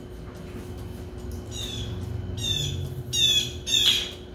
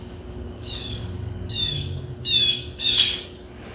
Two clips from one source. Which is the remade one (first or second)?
second